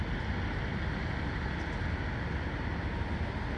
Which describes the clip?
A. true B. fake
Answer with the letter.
A